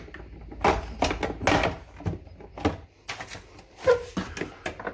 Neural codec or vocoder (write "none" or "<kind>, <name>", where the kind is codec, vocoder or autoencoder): none